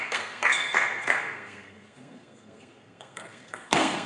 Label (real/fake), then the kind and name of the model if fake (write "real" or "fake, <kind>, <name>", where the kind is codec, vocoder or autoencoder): fake, codec, SNAC